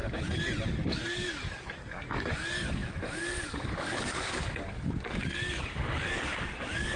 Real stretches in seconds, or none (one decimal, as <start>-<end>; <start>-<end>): 0.0-0.7

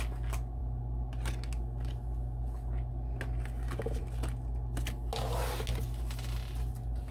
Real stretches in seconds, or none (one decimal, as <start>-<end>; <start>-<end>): 0.0-7.1

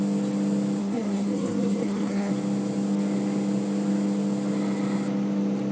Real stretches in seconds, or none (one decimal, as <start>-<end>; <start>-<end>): 0.0-0.8; 2.3-5.7

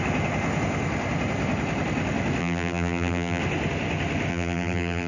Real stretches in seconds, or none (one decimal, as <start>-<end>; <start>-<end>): 0.0-2.4; 3.4-4.3

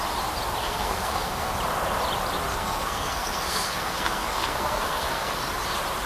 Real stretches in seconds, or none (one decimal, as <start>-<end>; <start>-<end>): 0.0-0.6; 1.5-2.5; 5.4-6.1

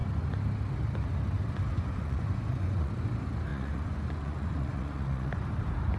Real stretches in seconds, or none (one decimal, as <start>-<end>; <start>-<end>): 0.0-1.7; 2.9-3.5; 5.3-6.0

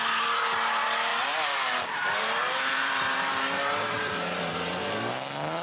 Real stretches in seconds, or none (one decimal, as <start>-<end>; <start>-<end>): 0.0-1.1; 4.5-5.6

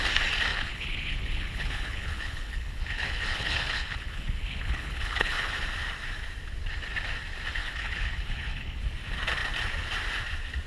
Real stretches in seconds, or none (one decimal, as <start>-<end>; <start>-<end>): 0.0-0.5; 5.5-7.6; 8.8-10.7